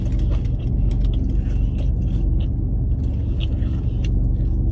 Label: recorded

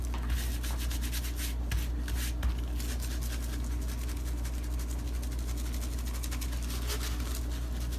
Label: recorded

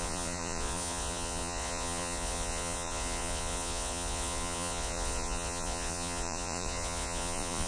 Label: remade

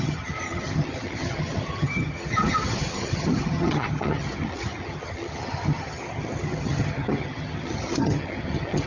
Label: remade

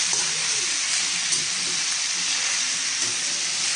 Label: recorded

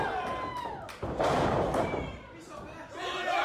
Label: recorded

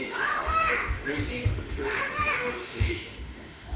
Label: remade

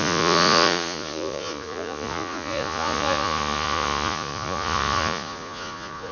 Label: remade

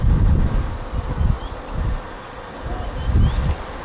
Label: recorded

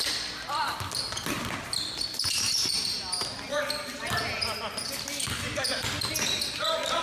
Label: recorded